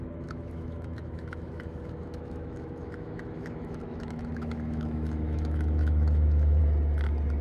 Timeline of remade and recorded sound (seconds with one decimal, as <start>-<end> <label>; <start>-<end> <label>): 0.0-6.6 remade; 6.6-7.4 recorded